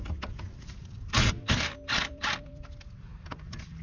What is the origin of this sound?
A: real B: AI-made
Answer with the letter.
B